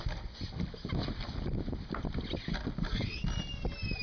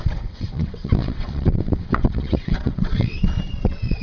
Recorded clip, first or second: first